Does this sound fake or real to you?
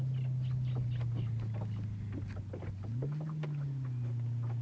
real